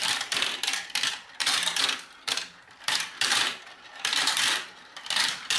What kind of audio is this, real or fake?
fake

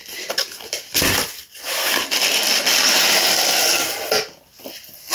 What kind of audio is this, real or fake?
real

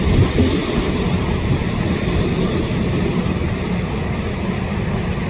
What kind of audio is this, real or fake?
real